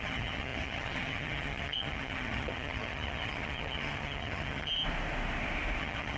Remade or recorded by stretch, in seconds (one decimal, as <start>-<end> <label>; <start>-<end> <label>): 0.0-4.7 remade; 4.7-5.8 recorded; 5.8-6.2 remade